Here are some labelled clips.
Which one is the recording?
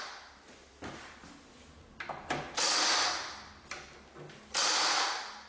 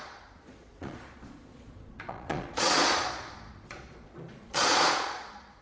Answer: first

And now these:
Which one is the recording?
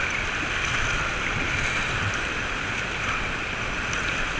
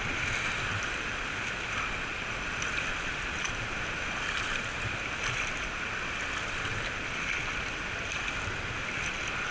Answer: second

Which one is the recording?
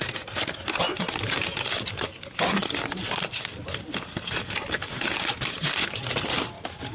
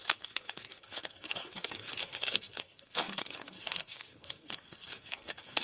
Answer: first